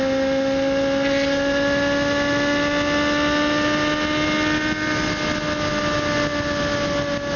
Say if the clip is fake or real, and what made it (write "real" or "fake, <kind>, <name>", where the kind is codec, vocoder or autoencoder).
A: real